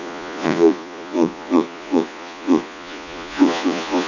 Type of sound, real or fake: fake